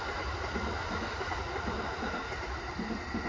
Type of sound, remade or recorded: recorded